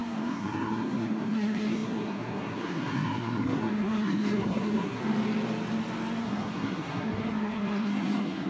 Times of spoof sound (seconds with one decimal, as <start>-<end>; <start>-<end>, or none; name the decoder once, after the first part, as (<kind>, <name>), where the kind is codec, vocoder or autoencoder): 0.0-5.0 (codec, SNAC); 6.2-8.5